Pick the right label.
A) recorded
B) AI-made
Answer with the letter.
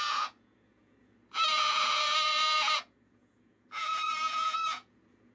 B